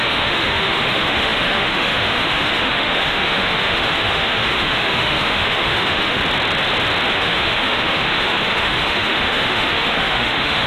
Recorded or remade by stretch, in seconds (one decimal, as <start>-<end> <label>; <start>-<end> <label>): 0.0-6.2 remade; 6.2-7.1 recorded; 7.1-10.7 remade